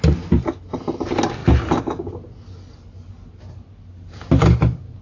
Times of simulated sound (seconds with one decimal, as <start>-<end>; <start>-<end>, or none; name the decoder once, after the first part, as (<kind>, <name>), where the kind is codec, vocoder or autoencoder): none